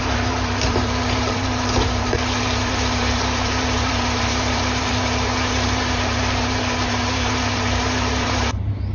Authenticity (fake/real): fake